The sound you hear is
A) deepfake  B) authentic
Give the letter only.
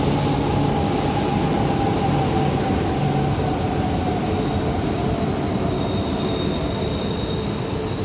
B